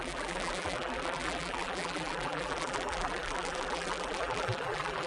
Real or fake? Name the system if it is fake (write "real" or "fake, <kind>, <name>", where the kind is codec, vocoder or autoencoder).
fake, vocoder, BigVGAN v2